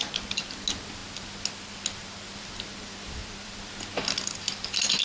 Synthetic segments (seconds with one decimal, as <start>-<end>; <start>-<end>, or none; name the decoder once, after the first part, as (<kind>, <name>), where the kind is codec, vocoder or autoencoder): 0.0-0.5 (vocoder, BigVGAN v2); 3.2-3.7